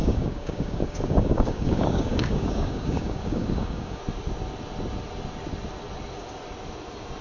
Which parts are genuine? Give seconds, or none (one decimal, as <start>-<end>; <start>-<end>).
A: 4.0-7.2